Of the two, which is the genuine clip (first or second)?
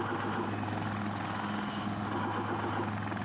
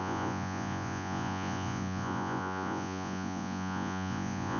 first